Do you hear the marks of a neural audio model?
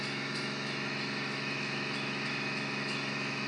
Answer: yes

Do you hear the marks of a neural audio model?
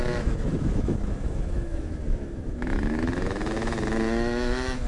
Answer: yes